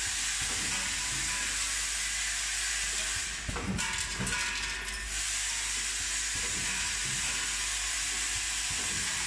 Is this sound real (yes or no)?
yes